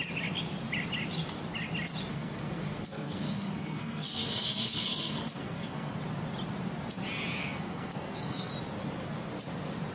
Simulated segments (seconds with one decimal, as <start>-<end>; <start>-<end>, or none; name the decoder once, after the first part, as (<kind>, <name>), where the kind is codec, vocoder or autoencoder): 2.1-5.9 (codec, SNAC); 7.4-8.5